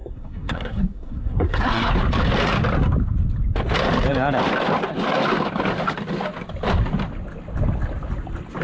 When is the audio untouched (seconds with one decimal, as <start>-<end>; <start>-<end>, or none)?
1.9-8.6